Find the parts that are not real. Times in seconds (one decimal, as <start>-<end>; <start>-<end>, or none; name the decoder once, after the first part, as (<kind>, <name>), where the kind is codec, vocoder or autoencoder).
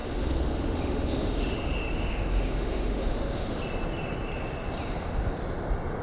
0.0-3.6 (autoencoder, DAC-VAE)